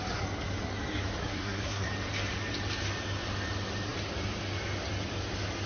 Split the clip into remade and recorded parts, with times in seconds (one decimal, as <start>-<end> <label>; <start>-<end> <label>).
0.0-1.2 recorded; 1.2-1.9 remade; 1.9-5.7 recorded